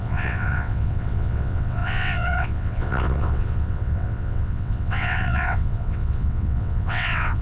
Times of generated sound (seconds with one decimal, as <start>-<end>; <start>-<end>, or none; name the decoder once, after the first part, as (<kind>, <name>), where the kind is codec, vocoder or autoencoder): 0.0-7.4 (vocoder, WaveNeXt)